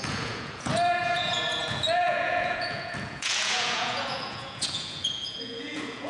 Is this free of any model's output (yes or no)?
no